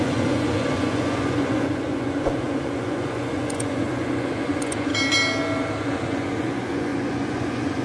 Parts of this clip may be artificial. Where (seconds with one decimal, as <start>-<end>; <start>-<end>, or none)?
0.0-4.9; 5.8-7.8